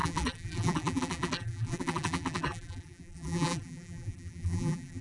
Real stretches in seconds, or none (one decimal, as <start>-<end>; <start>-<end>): none